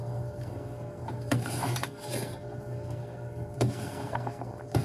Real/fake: fake